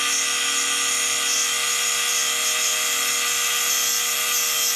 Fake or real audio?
real